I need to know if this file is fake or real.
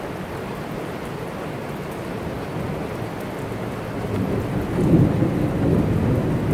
real